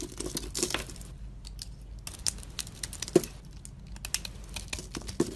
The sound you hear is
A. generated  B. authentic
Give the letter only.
B